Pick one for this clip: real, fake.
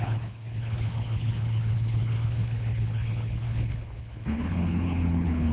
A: fake